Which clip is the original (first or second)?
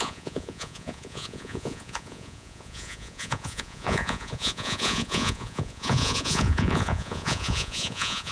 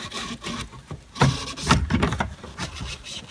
second